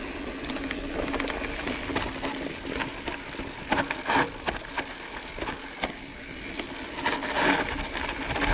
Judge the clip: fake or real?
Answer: real